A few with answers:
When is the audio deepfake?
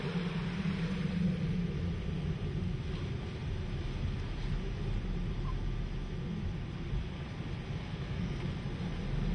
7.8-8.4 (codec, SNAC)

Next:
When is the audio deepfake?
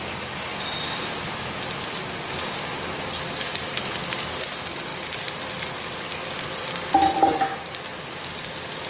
none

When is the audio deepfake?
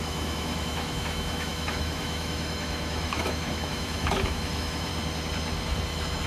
0.0-4.9 (autoencoder, DAC-VAE)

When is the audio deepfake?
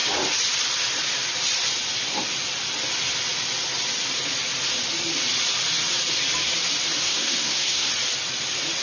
7.0-7.9 (codec, SNAC)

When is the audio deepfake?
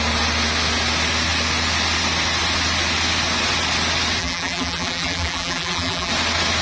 4.2-6.1 (vocoder, BigVGAN v2)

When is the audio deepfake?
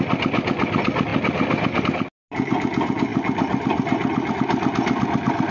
none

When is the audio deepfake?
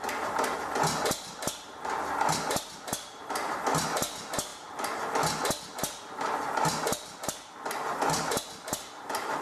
none